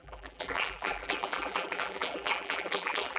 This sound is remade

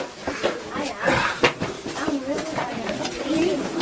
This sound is remade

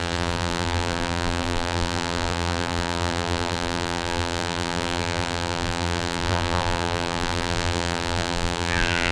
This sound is remade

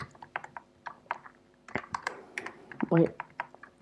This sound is remade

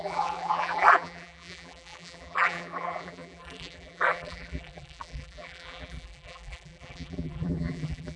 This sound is remade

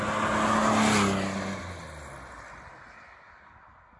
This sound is recorded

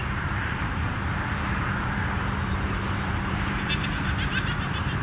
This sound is remade